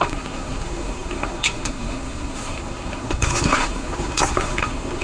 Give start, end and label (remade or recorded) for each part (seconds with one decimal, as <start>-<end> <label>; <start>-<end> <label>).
0.0-5.0 remade